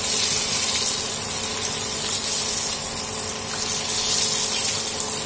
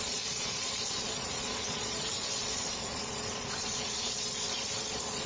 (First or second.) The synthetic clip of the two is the second